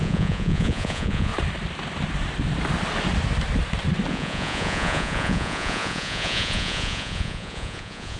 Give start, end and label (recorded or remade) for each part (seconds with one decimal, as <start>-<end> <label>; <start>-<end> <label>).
0.0-1.3 remade; 1.3-4.1 recorded; 4.1-8.2 remade